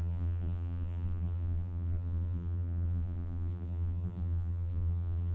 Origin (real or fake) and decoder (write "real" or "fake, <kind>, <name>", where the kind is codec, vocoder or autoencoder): fake, vocoder, BigVGAN v2